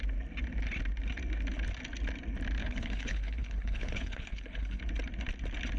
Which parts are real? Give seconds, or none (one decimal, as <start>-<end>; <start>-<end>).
0.0-2.6; 4.8-5.8